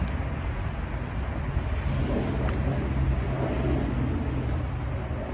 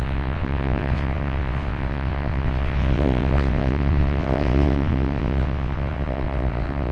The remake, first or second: second